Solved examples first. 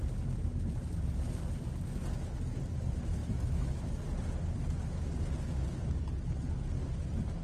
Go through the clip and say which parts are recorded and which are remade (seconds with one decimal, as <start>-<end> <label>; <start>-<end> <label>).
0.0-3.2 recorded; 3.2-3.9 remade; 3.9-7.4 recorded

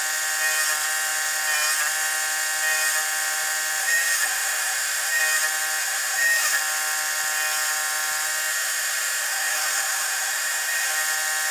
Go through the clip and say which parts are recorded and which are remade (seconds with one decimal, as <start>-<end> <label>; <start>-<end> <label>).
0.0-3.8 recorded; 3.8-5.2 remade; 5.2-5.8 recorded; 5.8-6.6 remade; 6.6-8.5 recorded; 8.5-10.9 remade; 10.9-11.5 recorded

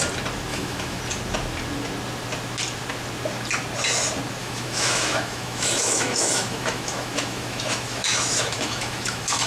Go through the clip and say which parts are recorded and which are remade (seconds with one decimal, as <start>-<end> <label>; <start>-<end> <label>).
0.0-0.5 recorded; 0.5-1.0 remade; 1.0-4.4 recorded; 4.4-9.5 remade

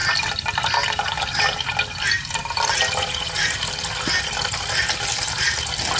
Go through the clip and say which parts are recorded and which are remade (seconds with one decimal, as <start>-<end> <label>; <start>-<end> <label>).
0.0-6.0 recorded

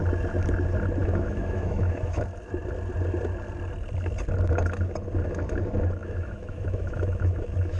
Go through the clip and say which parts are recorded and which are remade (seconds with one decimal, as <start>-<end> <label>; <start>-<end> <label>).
0.0-1.0 recorded; 1.0-2.2 remade; 2.2-6.0 recorded; 6.0-7.8 remade

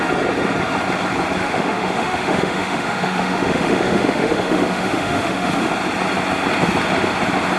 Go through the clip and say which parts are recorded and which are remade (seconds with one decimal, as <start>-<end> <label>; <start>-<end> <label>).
0.0-1.4 recorded; 1.4-5.7 remade; 5.7-7.6 recorded